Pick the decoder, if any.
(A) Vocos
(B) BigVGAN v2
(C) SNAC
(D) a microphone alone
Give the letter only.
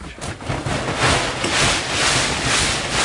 D